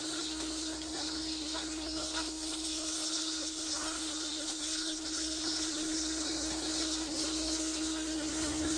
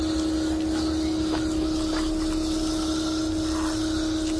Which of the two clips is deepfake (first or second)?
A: first